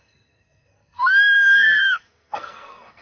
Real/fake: fake